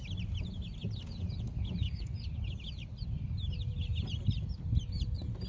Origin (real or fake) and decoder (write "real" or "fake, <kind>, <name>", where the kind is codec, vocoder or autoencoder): real